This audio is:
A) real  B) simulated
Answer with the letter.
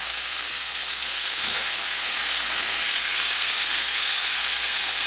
B